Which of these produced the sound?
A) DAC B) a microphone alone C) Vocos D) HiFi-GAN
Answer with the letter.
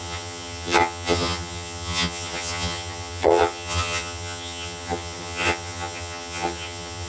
D